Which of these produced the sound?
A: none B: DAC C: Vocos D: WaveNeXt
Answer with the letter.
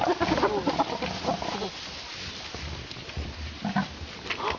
A